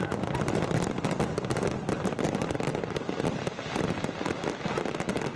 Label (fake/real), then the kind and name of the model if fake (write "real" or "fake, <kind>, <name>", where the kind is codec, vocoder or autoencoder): real